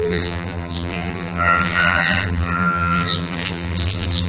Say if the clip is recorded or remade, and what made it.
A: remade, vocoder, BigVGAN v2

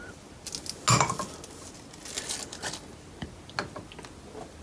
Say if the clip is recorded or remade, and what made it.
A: recorded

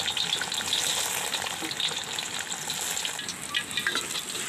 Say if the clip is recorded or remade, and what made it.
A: recorded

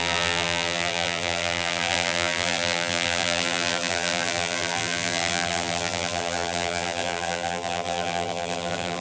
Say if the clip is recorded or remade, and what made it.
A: remade, vocoder, BigVGAN v2